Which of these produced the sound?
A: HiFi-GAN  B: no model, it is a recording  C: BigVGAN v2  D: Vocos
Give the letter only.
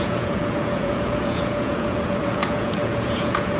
D